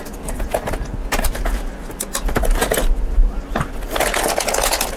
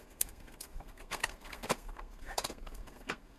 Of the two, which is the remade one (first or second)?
second